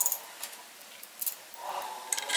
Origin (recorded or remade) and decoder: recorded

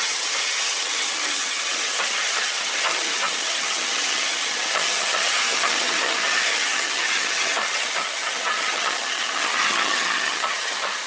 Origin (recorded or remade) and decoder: remade, vocoder, HiFi-GAN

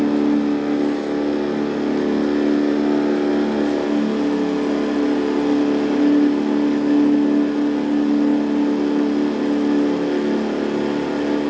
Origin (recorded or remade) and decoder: recorded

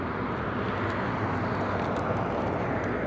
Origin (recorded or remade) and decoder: remade, vocoder, BigVGAN v2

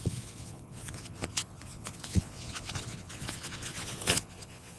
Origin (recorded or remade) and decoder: remade, vocoder, Vocos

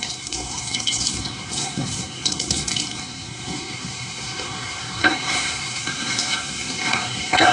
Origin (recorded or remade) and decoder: remade, codec, SNAC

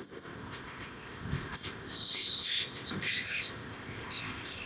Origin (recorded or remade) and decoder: remade, codec, ZipCodec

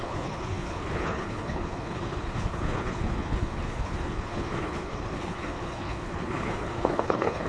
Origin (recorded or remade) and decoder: remade, codec, HILCodec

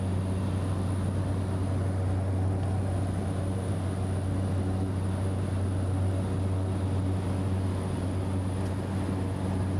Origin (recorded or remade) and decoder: recorded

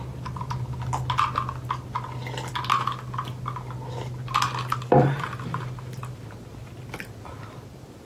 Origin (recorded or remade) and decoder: recorded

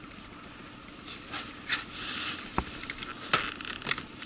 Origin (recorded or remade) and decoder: recorded